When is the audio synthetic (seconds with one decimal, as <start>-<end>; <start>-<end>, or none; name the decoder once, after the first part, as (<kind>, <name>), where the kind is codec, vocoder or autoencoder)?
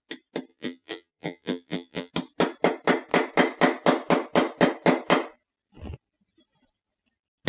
0.5-2.1 (vocoder, BigVGAN v2)